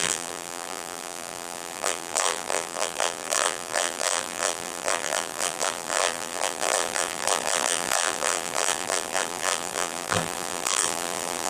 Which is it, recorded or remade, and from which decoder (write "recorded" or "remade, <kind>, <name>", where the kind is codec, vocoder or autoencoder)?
remade, vocoder, BigVGAN v2